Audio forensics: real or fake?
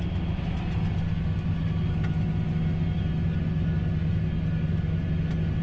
real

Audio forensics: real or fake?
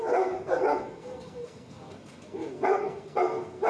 fake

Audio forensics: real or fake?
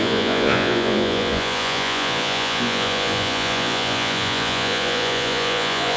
fake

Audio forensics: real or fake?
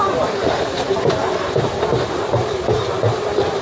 real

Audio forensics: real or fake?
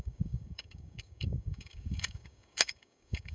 fake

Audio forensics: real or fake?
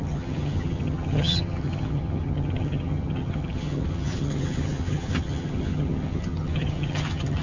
fake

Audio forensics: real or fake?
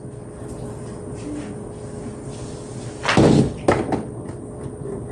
real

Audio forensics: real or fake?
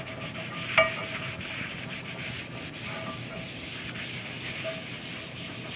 real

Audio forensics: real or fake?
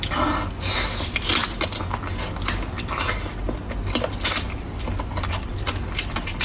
real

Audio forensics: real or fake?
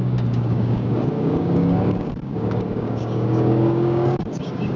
fake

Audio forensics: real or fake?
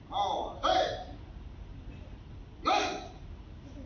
real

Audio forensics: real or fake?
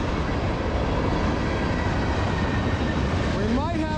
real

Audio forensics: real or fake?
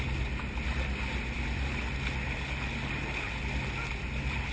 real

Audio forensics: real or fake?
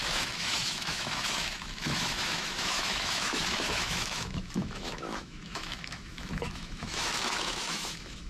fake